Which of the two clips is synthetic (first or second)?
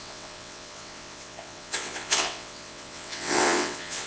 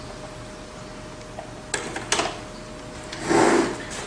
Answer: first